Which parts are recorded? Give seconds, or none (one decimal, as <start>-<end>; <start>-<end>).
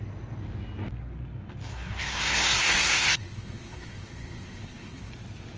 0.0-1.7; 5.1-5.6